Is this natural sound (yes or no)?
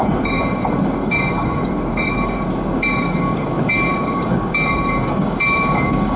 no